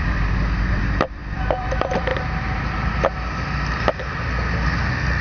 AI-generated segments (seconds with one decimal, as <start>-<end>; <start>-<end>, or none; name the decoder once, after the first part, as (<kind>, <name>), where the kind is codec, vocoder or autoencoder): 0.0-2.1 (vocoder, BigVGAN v2)